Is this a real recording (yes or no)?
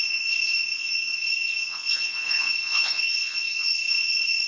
no